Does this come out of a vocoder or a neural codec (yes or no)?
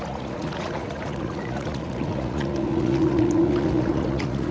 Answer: yes